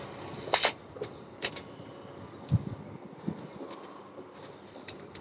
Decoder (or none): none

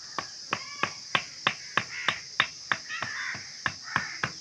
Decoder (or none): none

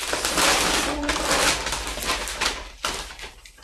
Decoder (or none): none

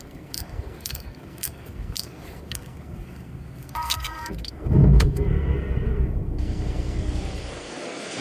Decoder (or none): codec, SNAC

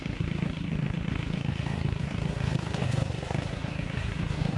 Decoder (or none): codec, SNAC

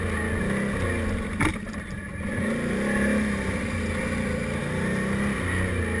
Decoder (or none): none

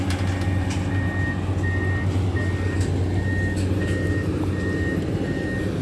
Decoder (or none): none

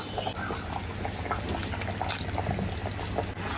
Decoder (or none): none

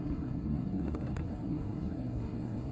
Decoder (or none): codec, SNAC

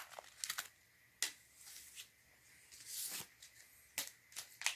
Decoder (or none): none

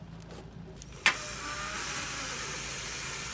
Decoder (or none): none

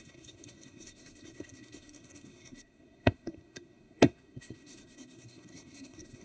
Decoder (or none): codec, SNAC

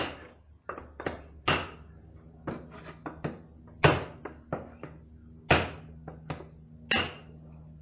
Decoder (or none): none